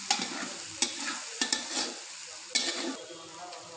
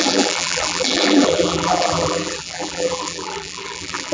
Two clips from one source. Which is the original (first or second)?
first